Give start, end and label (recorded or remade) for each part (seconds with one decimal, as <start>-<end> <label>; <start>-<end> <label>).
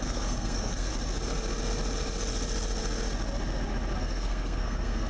0.0-0.9 remade; 0.9-4.0 recorded; 4.0-5.1 remade